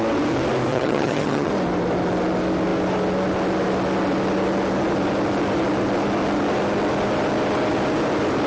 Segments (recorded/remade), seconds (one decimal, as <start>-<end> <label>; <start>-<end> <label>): 0.0-0.7 recorded; 0.7-1.5 remade; 1.5-8.5 recorded